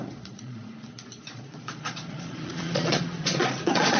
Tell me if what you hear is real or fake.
fake